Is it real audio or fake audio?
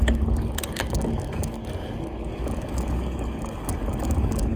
fake